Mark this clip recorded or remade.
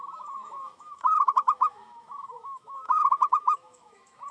remade